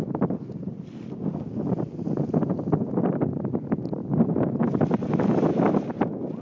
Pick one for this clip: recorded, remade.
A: recorded